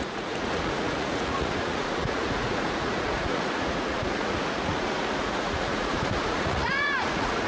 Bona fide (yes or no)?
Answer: no